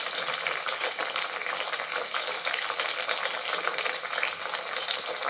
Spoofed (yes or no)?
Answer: no